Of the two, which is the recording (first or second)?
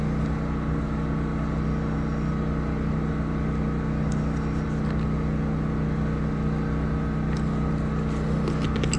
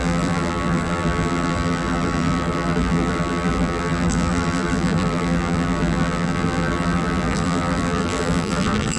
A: first